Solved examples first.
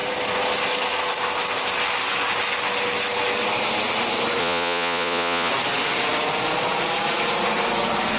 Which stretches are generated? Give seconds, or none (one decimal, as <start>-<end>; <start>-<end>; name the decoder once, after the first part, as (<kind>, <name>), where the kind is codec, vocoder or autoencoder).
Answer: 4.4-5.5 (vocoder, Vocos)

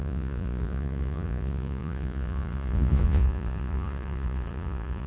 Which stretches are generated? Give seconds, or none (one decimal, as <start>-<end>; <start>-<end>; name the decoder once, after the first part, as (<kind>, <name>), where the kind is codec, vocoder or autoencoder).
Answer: 0.0-5.1 (vocoder, Vocos)

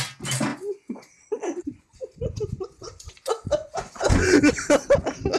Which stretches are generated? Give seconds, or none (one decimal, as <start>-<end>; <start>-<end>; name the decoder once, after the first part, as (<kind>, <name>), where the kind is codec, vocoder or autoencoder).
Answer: 0.5-1.1 (vocoder, Vocos); 1.6-4.5

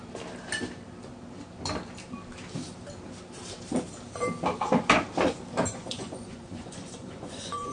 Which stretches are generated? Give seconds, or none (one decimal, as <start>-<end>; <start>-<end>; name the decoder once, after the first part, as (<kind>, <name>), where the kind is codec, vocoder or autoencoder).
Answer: 5.7-7.7 (vocoder, Vocos)